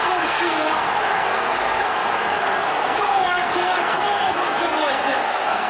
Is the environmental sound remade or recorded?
remade